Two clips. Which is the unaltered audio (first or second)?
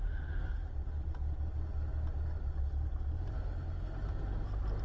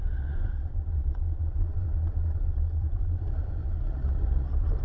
first